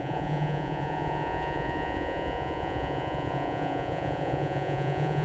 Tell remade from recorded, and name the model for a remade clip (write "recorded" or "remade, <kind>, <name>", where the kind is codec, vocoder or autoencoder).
remade, vocoder, Vocos